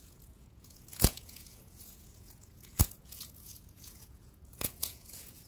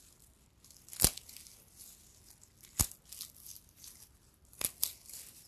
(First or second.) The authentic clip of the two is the second